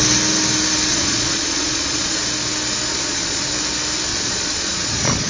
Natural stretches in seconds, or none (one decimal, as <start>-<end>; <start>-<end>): 0.0-0.9; 2.2-2.9; 3.5-4.1